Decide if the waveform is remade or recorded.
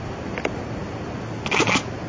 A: recorded